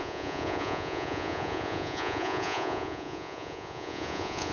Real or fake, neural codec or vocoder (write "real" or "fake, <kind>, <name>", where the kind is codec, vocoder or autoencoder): fake, vocoder, Vocos